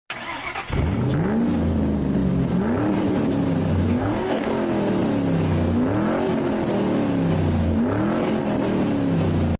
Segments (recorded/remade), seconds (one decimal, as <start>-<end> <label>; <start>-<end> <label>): 0.0-3.7 recorded; 3.7-4.5 remade; 4.5-9.6 recorded